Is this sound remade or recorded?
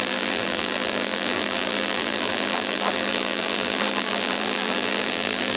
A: remade